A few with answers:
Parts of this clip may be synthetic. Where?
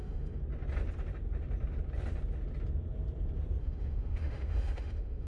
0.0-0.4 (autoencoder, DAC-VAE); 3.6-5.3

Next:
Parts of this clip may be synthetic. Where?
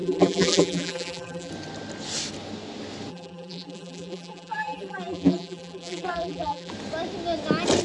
0.0-1.5 (vocoder, BigVGAN v2); 3.1-6.7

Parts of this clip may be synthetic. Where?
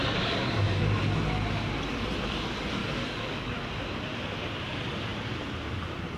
0.0-0.8 (codec, DAC); 2.8-3.5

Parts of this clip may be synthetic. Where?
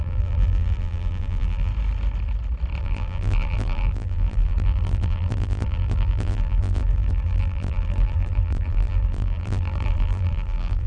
0.0-1.7 (vocoder, BigVGAN v2); 2.8-10.9